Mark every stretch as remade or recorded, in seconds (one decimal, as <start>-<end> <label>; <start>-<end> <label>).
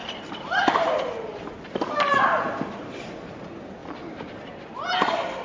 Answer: 0.0-3.1 remade; 3.1-3.8 recorded; 3.8-4.7 remade; 4.7-5.4 recorded